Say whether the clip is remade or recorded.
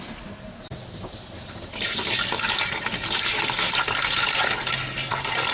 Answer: recorded